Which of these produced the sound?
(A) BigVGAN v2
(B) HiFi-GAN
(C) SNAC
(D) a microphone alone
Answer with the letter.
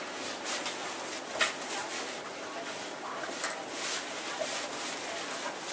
D